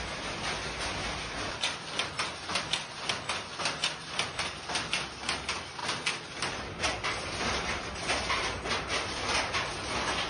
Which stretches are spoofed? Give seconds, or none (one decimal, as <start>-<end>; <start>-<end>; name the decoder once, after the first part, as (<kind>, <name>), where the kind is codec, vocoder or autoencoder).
none